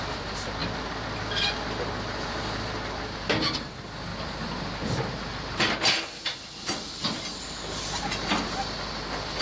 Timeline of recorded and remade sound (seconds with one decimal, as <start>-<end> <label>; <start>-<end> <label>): 0.0-9.4 recorded